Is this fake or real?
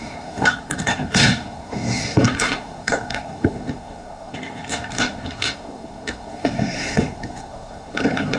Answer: fake